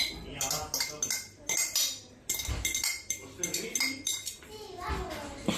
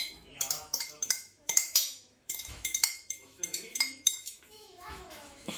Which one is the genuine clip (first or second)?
first